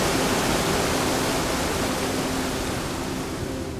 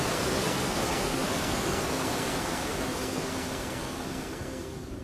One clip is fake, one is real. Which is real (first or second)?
first